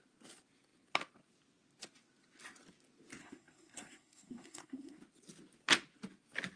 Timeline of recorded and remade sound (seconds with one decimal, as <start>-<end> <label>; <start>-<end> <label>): 0.0-3.2 recorded; 3.2-5.0 remade; 5.0-6.6 recorded